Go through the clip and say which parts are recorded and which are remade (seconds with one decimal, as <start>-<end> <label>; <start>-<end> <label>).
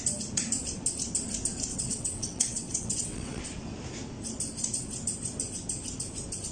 0.0-1.7 recorded; 1.7-3.4 remade; 3.4-6.5 recorded